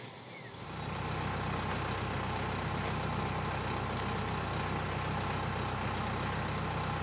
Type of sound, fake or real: real